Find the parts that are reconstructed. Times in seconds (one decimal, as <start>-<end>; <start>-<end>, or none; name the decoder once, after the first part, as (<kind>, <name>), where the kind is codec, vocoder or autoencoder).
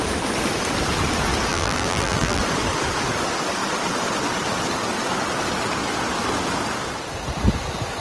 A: 1.5-2.4 (vocoder, BigVGAN v2)